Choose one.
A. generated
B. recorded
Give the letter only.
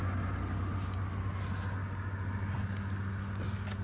B